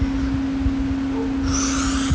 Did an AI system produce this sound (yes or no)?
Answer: no